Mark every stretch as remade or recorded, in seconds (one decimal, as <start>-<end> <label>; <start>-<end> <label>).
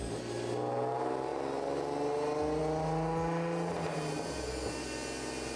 0.0-5.6 recorded